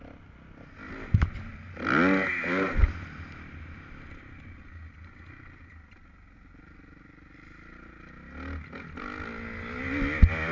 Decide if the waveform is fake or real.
real